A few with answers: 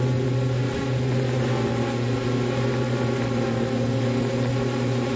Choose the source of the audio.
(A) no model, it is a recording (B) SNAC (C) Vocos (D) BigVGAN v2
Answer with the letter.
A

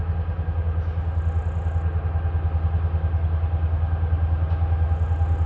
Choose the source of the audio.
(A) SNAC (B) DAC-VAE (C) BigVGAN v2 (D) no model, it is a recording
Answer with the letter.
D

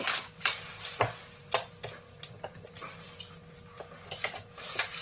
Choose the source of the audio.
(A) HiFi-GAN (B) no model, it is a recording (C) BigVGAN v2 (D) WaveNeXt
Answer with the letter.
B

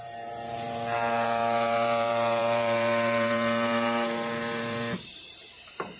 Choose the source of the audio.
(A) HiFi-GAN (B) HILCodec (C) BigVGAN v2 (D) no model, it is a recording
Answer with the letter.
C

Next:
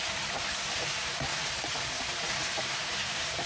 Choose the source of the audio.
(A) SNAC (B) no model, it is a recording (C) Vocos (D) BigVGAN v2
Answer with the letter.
B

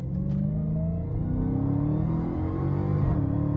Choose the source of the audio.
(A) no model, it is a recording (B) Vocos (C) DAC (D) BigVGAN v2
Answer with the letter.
A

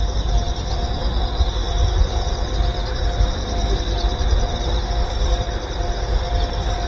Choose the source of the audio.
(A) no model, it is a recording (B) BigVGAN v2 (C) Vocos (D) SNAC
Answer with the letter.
B